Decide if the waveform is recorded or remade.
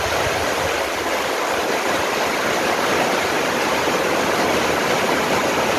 recorded